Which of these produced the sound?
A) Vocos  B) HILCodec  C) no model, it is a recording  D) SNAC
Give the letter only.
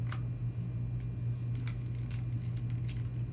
C